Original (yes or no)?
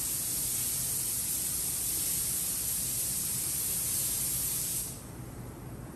no